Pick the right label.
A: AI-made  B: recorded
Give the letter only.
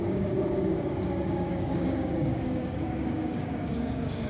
A